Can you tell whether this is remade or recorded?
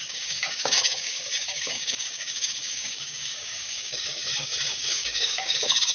remade